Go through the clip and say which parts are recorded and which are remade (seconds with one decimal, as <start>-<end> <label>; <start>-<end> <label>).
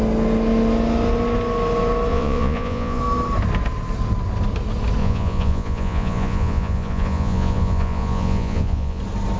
0.0-2.1 recorded; 2.1-3.0 remade; 3.0-5.0 recorded; 5.0-9.0 remade; 9.0-9.4 recorded